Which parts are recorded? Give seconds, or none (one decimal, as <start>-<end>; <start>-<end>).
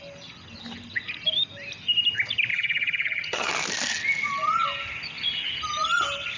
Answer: 0.0-2.5; 3.5-6.4